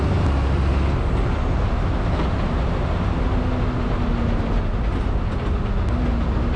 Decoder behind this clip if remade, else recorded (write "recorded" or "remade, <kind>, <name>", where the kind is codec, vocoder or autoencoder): recorded